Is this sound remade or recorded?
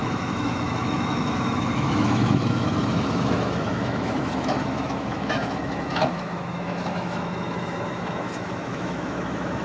remade